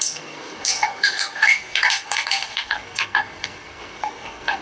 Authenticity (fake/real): fake